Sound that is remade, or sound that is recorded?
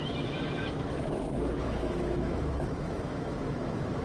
remade